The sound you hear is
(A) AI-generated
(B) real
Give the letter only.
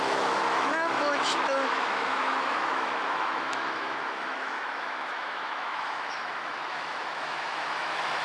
A